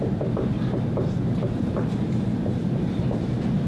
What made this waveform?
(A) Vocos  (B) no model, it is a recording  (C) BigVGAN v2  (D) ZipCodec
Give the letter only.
C